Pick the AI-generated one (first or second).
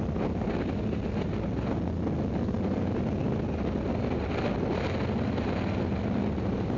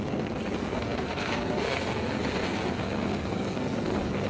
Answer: second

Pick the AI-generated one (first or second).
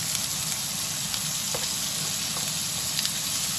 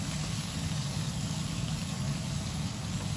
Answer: second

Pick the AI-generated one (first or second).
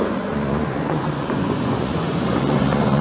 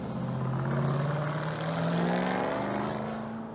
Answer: first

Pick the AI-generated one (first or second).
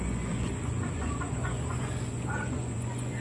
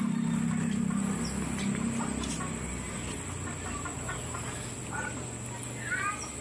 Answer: first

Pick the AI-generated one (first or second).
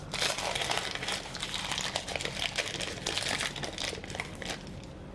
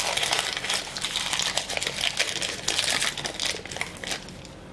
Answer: first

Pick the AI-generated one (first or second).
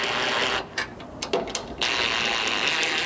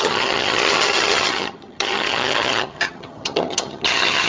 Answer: second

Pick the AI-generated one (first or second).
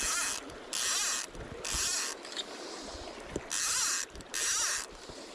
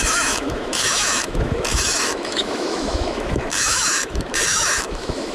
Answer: second